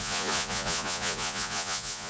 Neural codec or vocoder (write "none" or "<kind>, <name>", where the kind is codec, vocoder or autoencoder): vocoder, Vocos